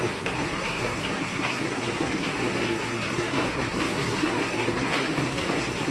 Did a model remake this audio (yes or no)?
yes